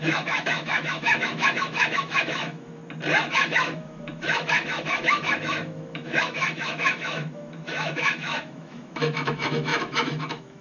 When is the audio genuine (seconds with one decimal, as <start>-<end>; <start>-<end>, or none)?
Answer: 2.8-3.3

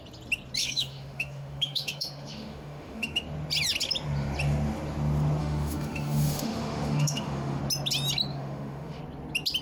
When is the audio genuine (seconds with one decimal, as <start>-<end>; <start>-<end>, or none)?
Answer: 0.0-0.6; 3.2-5.4; 7.6-8.3; 9.0-9.6